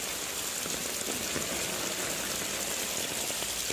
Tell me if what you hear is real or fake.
real